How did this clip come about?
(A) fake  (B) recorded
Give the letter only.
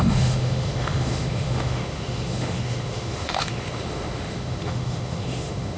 A